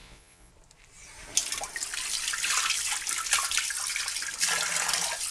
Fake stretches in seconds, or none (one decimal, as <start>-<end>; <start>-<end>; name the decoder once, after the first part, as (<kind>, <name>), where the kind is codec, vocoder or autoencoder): 0.0-0.5 (vocoder, Vocos)